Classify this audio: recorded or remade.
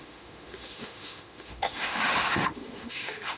remade